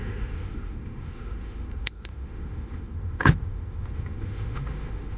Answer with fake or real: fake